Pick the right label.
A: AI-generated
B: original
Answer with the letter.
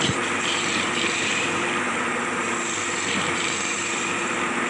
A